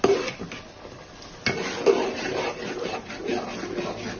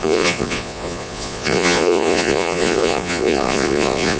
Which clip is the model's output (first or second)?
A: second